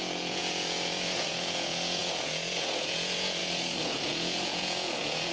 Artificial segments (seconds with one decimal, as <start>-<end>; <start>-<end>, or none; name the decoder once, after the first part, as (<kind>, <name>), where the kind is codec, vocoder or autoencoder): 0.0-5.3 (vocoder, Vocos)